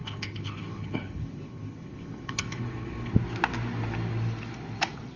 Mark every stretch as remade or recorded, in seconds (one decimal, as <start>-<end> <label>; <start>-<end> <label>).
0.0-3.1 remade; 3.1-5.2 recorded